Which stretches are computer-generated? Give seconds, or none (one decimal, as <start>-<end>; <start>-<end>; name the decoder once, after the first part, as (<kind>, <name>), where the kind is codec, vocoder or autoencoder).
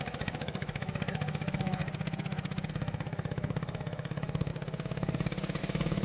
0.0-1.8 (autoencoder, DAC-VAE); 2.7-4.5; 5.6-6.0